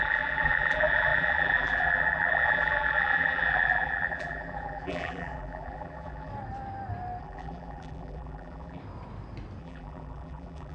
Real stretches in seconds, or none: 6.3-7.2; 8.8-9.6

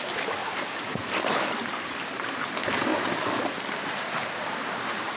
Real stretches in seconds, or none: 0.0-5.2

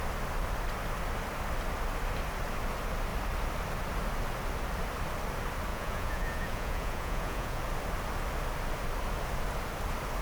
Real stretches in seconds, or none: 0.0-5.7; 7.6-10.2

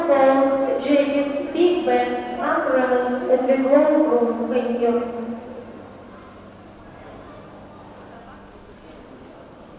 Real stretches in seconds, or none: 0.0-2.3; 7.3-9.8

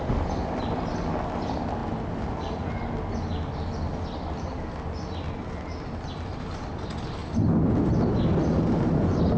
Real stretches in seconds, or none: 0.0-9.4

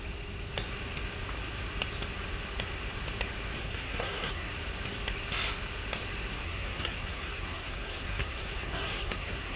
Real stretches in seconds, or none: 0.0-3.6; 4.5-6.4